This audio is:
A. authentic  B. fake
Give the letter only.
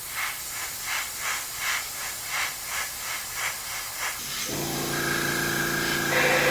A